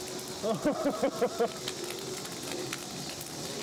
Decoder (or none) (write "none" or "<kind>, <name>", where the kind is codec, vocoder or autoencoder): none